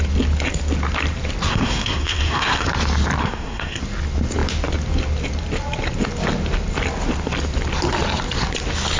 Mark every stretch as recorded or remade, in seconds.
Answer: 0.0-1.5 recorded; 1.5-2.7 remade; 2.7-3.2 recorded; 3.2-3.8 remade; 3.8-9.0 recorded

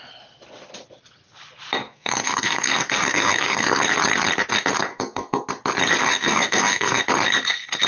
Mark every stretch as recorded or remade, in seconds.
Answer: 0.0-1.8 recorded; 1.8-3.8 remade; 3.8-4.9 recorded; 4.9-5.5 remade; 5.5-6.1 recorded; 6.1-7.0 remade; 7.0-7.9 recorded

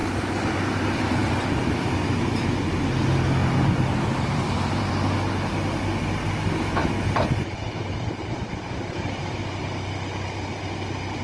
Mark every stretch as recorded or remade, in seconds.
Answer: 0.0-1.2 recorded; 1.2-2.0 remade; 2.0-3.4 recorded; 3.4-5.1 remade; 5.1-11.2 recorded

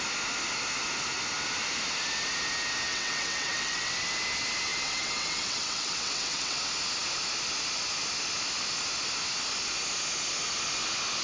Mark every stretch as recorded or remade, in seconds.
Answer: 0.0-2.9 recorded; 2.9-3.9 remade; 3.9-4.7 recorded; 4.7-6.6 remade; 6.6-11.2 recorded

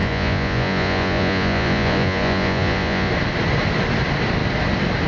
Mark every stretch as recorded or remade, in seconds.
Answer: 0.0-3.1 remade; 3.1-5.1 recorded